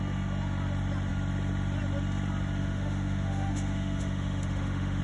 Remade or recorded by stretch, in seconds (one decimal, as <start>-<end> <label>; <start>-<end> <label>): 0.0-2.6 recorded; 2.6-5.0 remade